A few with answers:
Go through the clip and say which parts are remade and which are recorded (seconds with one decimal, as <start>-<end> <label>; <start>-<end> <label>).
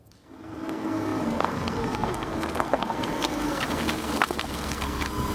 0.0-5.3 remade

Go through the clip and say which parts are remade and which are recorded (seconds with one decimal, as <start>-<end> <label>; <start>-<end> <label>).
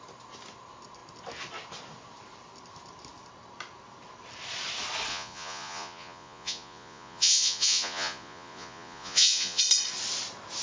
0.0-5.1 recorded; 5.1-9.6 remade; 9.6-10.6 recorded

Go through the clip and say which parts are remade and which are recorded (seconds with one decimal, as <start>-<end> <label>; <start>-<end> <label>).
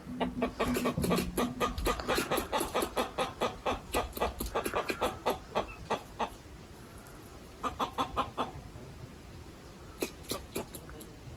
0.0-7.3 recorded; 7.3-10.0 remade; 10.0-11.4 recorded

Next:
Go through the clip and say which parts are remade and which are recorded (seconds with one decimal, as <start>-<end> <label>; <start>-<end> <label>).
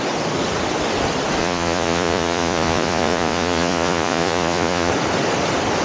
0.0-1.4 recorded; 1.4-4.9 remade; 4.9-5.8 recorded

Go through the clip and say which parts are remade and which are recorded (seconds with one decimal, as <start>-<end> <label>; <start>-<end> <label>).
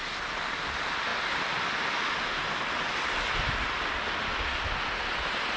0.0-5.6 recorded